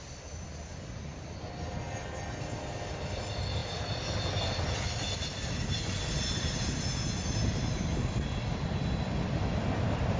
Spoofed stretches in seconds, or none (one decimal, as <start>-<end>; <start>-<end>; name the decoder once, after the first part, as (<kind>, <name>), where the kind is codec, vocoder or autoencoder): none

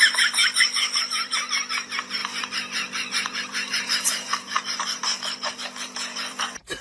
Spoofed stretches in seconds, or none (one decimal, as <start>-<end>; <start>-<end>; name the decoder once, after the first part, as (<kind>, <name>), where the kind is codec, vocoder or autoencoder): 0.0-0.4 (vocoder, BigVGAN v2); 1.0-6.8

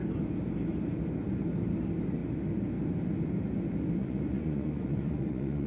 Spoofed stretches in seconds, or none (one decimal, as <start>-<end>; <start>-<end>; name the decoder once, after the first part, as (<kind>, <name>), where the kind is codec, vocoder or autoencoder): 4.0-5.7 (vocoder, Vocos)

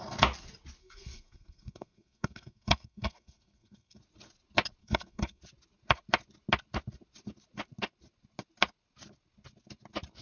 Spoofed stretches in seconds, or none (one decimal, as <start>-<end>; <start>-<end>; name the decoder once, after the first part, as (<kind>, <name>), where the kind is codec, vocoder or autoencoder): 0.8-4.0 (codec, SNAC); 4.8-5.4